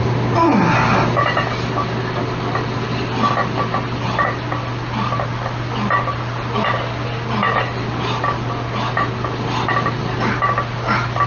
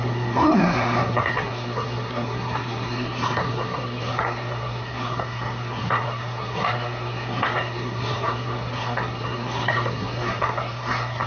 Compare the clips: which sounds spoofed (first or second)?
second